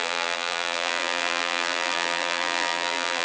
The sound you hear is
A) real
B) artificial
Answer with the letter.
B